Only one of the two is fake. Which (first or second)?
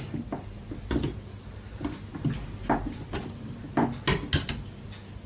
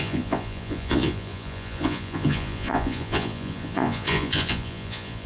second